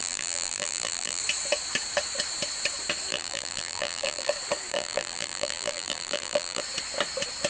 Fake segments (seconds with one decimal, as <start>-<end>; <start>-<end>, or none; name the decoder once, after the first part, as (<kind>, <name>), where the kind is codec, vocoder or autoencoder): 0.0-1.2 (vocoder, BigVGAN v2); 3.1-4.3; 4.7-6.6